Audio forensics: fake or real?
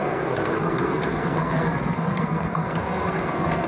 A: fake